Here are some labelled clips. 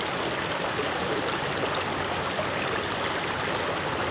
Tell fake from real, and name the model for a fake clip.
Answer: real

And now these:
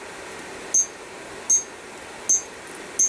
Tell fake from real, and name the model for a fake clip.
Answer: real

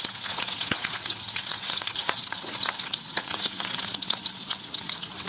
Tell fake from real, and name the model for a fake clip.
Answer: fake, vocoder, WaveNeXt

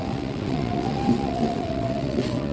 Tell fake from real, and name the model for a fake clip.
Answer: fake, vocoder, WaveNeXt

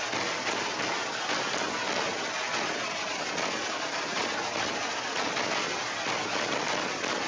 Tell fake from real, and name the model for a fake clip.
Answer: real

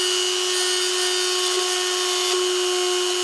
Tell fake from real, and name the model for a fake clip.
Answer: real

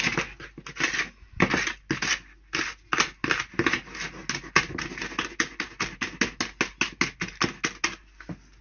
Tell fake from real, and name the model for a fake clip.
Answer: real